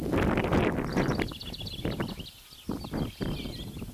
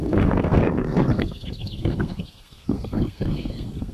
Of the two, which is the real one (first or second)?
first